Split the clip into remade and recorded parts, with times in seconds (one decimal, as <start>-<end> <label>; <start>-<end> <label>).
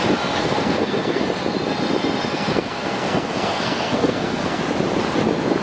0.0-0.4 recorded; 0.4-1.2 remade; 1.2-2.3 recorded; 2.3-4.6 remade; 4.6-5.6 recorded